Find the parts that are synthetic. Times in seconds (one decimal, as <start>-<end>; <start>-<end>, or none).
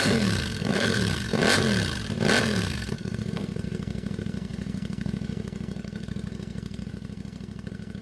0.0-1.4; 2.4-8.0